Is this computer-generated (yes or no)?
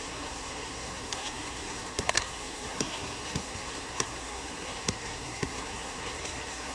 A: yes